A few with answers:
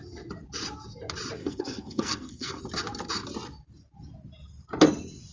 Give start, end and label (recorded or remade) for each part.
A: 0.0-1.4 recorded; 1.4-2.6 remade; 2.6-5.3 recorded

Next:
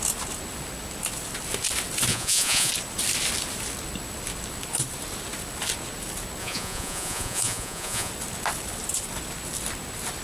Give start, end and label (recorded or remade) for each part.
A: 0.0-2.1 recorded; 2.1-2.7 remade; 2.7-6.4 recorded; 6.4-8.1 remade; 8.1-10.2 recorded

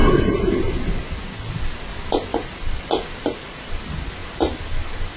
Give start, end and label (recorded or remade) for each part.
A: 0.0-1.6 remade; 1.6-2.3 recorded; 2.3-3.8 remade; 3.8-5.2 recorded

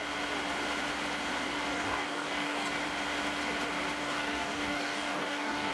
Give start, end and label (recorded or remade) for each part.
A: 0.0-1.7 recorded; 1.7-2.7 remade; 2.7-4.0 recorded; 4.0-5.7 remade

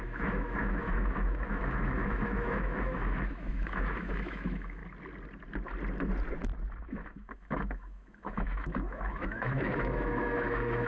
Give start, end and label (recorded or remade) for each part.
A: 0.0-4.8 remade; 4.8-6.8 recorded; 6.8-10.9 remade

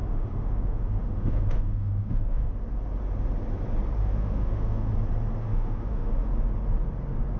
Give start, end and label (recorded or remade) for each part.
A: 0.0-2.5 remade; 2.5-4.0 recorded; 4.0-4.9 remade; 4.9-5.5 recorded; 5.5-6.3 remade; 6.3-7.4 recorded